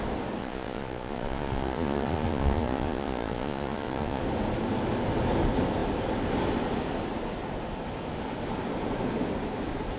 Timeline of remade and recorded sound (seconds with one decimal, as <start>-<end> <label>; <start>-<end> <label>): 0.0-0.4 recorded; 0.4-4.2 remade; 4.2-10.0 recorded